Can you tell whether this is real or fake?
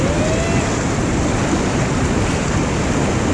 real